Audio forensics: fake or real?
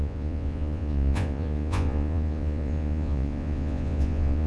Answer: fake